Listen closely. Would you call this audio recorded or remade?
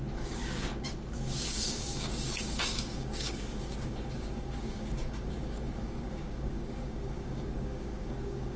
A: remade